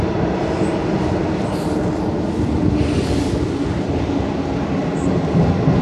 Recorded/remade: recorded